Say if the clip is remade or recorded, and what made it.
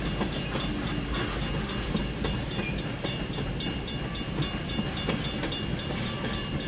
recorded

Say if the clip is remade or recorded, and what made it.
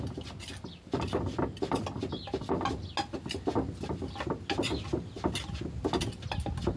recorded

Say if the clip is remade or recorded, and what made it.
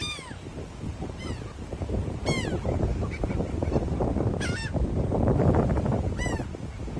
remade, vocoder, BigVGAN v2